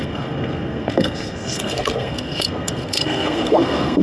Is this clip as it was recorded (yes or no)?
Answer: no